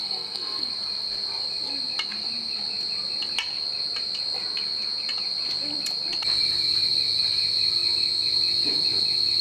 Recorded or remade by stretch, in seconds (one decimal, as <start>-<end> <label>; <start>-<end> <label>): 0.0-0.7 remade; 0.7-9.4 recorded